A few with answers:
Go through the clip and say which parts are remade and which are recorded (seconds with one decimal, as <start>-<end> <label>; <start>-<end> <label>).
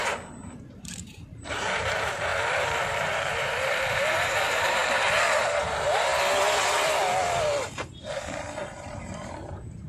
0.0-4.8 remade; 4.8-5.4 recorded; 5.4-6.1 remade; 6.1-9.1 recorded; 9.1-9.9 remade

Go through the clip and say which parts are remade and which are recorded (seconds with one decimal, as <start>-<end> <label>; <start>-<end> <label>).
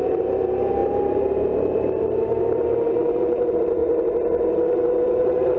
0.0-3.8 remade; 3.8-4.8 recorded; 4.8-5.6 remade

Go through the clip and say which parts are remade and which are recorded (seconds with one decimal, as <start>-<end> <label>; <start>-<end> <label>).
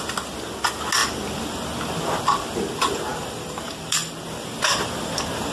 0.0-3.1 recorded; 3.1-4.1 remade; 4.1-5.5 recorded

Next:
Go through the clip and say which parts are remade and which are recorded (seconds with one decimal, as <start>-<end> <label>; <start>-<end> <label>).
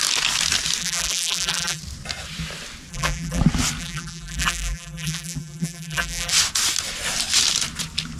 0.0-0.8 recorded; 0.8-1.8 remade; 1.8-2.9 recorded; 2.9-3.4 remade; 3.4-3.8 recorded; 3.8-6.3 remade; 6.3-8.2 recorded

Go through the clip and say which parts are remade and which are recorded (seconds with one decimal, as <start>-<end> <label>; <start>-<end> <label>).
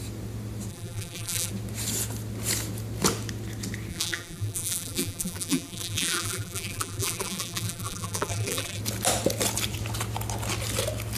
0.0-0.7 recorded; 0.7-1.5 remade; 1.5-3.9 recorded; 3.9-8.8 remade; 8.8-11.2 recorded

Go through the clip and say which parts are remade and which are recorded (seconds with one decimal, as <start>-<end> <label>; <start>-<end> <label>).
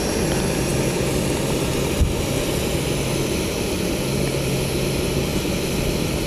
0.0-6.3 recorded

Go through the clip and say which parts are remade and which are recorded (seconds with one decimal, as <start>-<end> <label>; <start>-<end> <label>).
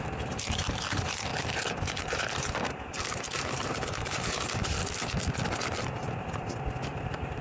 0.0-1.3 remade; 1.3-1.9 recorded; 1.9-4.8 remade; 4.8-7.0 recorded; 7.0-7.4 remade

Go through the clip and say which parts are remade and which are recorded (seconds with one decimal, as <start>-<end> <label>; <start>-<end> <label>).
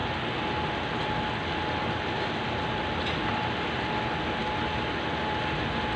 0.0-6.0 recorded